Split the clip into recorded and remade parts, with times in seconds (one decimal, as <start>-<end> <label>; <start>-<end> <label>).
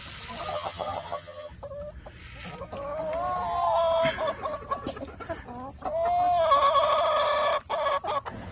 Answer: 0.0-0.5 recorded; 0.5-1.5 remade; 1.5-8.5 recorded